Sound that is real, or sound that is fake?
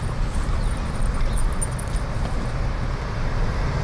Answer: real